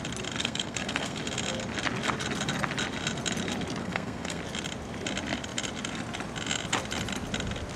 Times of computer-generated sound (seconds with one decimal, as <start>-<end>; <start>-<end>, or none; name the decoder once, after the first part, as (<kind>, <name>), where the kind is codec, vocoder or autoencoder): 0.4-1.2 (codec, SNAC); 3.8-4.4